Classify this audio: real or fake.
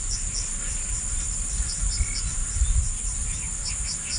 real